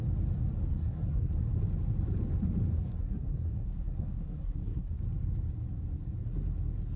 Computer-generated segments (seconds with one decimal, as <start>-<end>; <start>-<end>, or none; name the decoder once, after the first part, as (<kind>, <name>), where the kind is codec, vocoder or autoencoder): 0.7-1.3 (codec, SNAC); 2.7-5.0

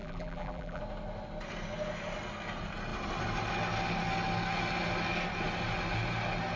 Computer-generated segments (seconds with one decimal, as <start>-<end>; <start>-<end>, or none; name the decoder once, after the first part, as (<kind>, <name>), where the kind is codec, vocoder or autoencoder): 0.0-0.8 (vocoder, BigVGAN v2)